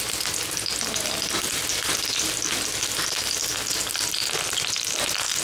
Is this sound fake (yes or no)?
no